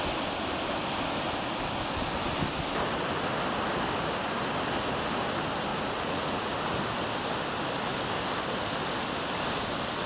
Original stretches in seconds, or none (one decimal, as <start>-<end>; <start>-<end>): 0.0-5.7; 6.5-10.1